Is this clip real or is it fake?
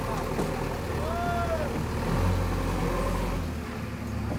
real